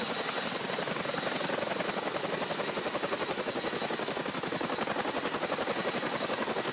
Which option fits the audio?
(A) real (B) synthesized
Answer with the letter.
A